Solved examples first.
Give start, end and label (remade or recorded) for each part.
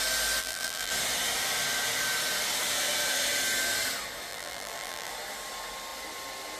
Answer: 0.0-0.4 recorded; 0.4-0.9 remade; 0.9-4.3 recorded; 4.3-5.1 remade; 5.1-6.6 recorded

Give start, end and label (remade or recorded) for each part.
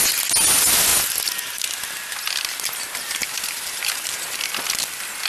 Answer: 0.0-5.3 recorded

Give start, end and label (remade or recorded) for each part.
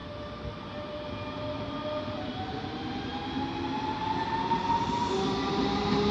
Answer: 0.0-6.1 recorded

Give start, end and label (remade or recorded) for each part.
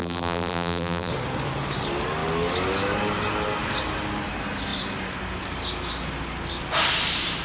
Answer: 0.0-1.1 remade; 1.1-7.4 recorded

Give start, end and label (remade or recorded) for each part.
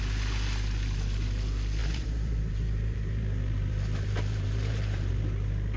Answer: 0.0-1.8 recorded; 1.8-5.1 remade; 5.1-5.8 recorded